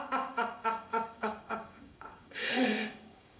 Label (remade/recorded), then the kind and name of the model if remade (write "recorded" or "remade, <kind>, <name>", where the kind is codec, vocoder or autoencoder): remade, codec, DAC